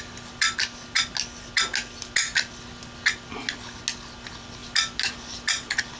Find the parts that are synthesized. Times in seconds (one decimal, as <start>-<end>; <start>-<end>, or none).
none